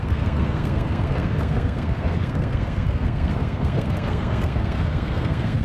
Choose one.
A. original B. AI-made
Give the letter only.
B